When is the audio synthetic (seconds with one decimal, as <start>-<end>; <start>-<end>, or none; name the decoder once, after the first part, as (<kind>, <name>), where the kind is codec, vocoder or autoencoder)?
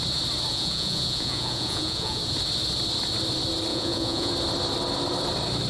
0.5-2.2 (vocoder, Vocos); 3.7-4.3